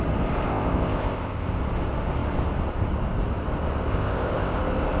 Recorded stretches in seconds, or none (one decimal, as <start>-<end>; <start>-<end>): 0.0-0.5; 1.6-3.9; 4.6-5.0